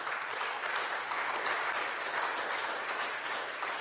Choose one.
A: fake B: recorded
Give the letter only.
B